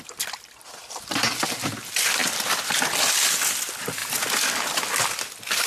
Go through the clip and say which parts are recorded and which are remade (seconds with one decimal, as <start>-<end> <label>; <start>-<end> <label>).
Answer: 0.0-5.7 recorded

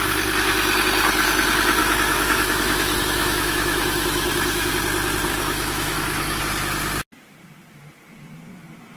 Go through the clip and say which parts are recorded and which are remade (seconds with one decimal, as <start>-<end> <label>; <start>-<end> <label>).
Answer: 0.0-1.8 recorded; 1.8-4.7 remade; 4.7-5.3 recorded; 5.3-6.4 remade; 6.4-9.0 recorded

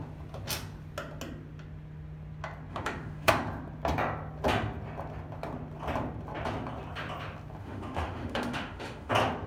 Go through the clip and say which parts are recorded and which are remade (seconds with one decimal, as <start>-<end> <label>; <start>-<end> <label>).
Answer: 0.0-2.7 recorded; 2.7-3.3 remade; 3.3-7.6 recorded; 7.6-9.1 remade; 9.1-9.5 recorded

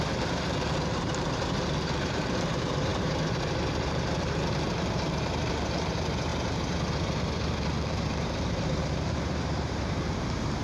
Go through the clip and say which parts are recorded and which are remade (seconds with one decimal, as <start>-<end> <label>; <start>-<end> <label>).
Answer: 0.0-6.3 remade; 6.3-7.5 recorded; 7.5-10.6 remade